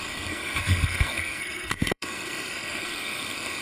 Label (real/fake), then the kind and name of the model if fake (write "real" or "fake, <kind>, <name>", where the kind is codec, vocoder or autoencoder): fake, codec, SNAC